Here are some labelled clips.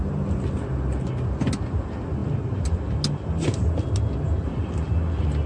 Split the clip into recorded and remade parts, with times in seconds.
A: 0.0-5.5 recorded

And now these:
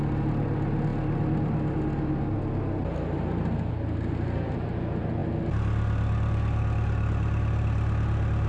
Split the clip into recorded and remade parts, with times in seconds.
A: 0.0-8.5 recorded

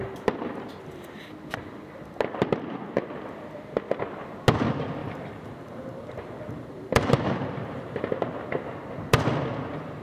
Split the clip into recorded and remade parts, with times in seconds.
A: 0.0-5.0 recorded; 5.0-8.1 remade; 8.1-10.0 recorded

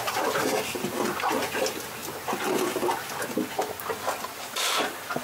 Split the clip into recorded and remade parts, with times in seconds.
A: 0.0-5.2 recorded

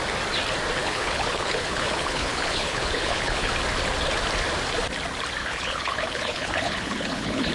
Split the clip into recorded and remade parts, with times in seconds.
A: 0.0-0.8 recorded; 0.8-3.5 remade; 3.5-5.4 recorded; 5.4-7.5 remade

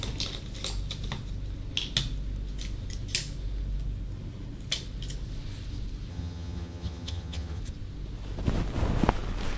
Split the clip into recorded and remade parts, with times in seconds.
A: 0.0-6.1 recorded; 6.1-7.6 remade; 7.6-9.6 recorded

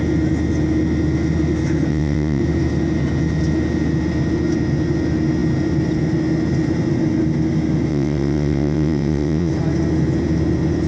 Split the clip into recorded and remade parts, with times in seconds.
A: 0.0-1.9 recorded; 1.9-2.4 remade; 2.4-7.9 recorded; 7.9-9.5 remade; 9.5-10.9 recorded